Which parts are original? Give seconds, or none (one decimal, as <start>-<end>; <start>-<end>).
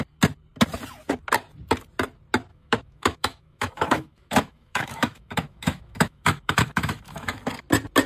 0.0-2.5; 7.4-8.1